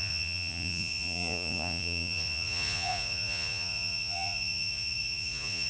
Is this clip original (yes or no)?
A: no